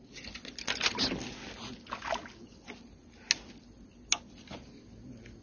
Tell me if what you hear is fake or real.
real